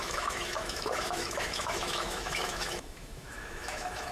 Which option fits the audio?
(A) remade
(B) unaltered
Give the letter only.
A